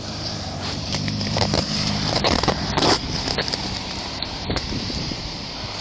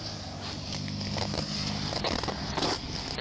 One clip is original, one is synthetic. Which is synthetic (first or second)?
first